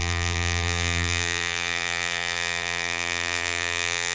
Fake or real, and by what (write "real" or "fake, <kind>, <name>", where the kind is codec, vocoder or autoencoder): fake, vocoder, BigVGAN v2